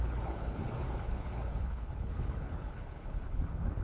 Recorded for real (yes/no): no